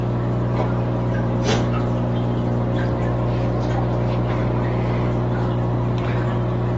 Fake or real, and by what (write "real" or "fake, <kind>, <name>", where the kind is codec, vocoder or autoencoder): real